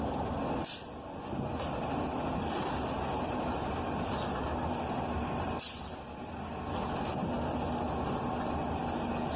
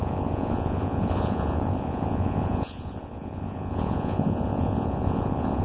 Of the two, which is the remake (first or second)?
second